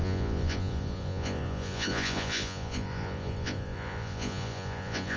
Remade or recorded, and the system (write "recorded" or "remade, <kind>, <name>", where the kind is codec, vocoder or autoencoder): remade, vocoder, Vocos